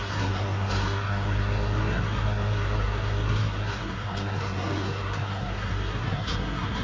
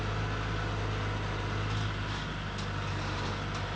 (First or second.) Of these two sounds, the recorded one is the second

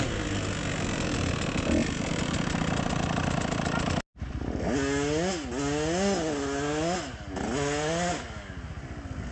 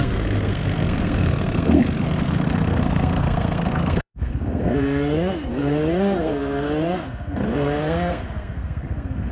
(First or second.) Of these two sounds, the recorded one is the first